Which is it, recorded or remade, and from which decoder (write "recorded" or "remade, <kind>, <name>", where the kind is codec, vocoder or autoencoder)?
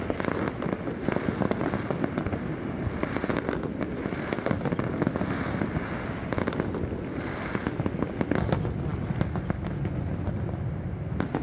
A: recorded